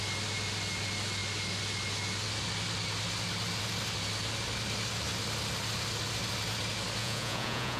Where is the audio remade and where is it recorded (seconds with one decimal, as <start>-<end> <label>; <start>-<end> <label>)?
0.0-7.0 recorded; 7.0-7.8 remade